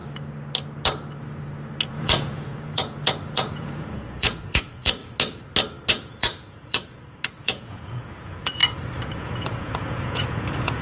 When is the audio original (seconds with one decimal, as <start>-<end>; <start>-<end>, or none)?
0.0-1.9; 5.0-5.9; 8.6-9.2